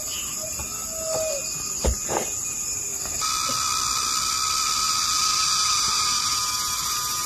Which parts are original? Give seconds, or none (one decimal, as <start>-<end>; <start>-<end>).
0.0-7.3